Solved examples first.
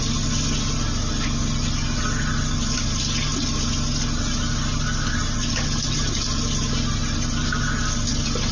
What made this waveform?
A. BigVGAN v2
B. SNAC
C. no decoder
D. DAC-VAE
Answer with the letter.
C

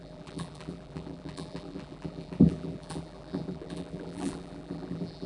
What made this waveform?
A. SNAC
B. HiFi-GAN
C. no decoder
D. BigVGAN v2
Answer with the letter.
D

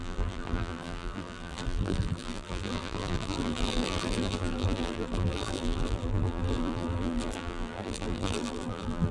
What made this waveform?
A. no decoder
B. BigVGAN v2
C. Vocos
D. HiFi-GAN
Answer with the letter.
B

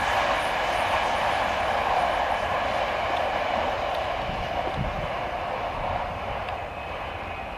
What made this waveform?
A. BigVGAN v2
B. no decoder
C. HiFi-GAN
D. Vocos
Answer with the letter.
B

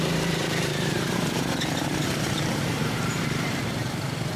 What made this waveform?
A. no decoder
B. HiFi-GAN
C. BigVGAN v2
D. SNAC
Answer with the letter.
C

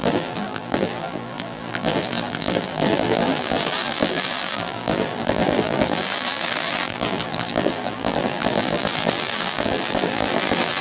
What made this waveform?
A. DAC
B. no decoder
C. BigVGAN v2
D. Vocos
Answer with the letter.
C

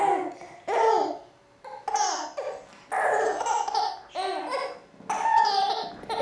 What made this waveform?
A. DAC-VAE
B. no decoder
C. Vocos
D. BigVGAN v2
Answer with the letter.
B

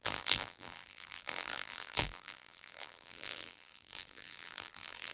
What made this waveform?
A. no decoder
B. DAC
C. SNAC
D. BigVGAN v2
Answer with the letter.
D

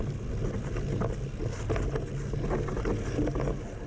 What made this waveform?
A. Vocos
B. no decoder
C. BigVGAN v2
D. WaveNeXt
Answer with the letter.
B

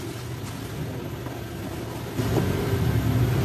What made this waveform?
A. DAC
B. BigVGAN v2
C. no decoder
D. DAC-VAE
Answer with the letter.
C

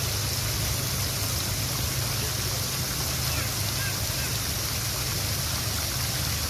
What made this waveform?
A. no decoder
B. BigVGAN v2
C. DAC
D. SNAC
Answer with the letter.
A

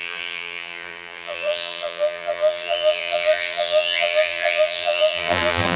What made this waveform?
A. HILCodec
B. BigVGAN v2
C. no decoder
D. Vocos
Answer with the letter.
B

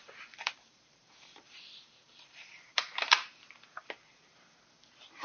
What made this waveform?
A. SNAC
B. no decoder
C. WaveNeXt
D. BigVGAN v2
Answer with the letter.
D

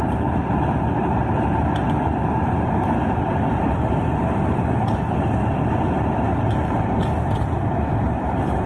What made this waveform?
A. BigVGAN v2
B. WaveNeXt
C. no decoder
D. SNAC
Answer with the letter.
A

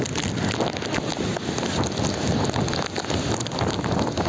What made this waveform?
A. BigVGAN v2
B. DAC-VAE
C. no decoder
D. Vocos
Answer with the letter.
C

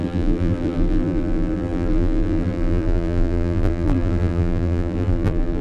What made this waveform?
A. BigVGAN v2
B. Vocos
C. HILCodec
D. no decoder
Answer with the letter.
A